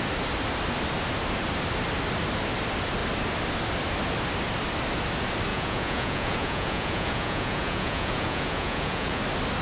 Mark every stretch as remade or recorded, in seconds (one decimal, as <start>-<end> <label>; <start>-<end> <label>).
0.0-5.5 recorded; 5.5-9.2 remade; 9.2-9.6 recorded